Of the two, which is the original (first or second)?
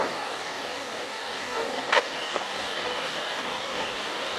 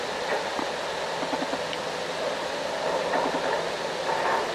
second